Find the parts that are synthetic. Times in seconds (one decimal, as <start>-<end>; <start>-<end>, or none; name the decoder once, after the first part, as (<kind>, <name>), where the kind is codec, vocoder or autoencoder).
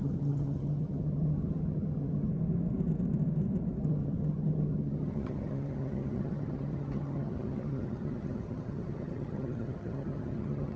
0.0-2.3 (vocoder, HiFi-GAN); 3.8-10.8